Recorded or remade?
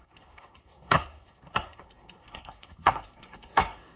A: remade